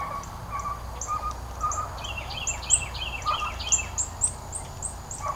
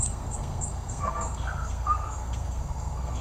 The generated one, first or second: second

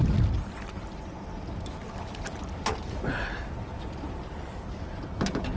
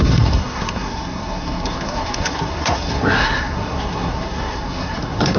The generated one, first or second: second